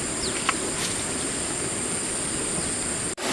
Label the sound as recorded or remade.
recorded